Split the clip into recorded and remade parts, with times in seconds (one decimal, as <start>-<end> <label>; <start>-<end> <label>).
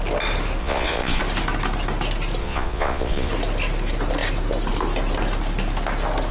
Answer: 0.0-0.6 recorded; 0.6-1.2 remade; 1.2-2.4 recorded; 2.4-3.3 remade; 3.3-6.3 recorded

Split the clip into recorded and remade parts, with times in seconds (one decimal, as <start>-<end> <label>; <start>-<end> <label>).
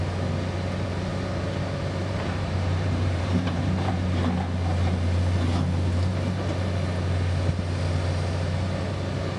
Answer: 0.0-2.0 recorded; 2.0-3.9 remade; 3.9-9.4 recorded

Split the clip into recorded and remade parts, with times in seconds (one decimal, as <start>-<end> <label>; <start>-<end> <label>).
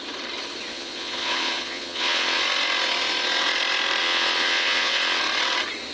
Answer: 0.0-0.7 recorded; 0.7-2.4 remade; 2.4-4.0 recorded; 4.0-5.2 remade; 5.2-5.9 recorded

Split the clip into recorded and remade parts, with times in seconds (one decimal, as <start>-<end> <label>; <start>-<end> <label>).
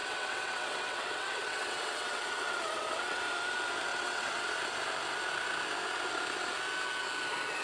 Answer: 0.0-3.2 remade; 3.2-3.9 recorded; 3.9-4.6 remade; 4.6-7.6 recorded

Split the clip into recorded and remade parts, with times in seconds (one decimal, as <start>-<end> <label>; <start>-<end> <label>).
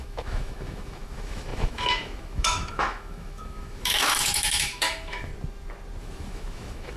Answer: 0.0-5.3 remade; 5.3-6.0 recorded; 6.0-7.0 remade